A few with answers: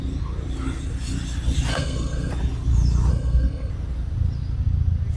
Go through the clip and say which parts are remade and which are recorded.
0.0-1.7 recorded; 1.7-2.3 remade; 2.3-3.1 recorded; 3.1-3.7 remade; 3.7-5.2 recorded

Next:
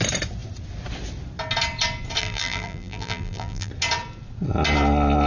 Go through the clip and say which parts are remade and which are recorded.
0.0-2.2 recorded; 2.2-3.7 remade; 3.7-5.3 recorded

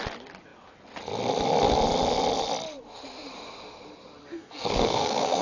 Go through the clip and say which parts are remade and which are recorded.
0.0-4.2 recorded; 4.2-5.4 remade

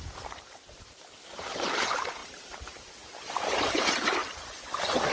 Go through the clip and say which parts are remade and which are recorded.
0.0-4.2 remade; 4.2-5.1 recorded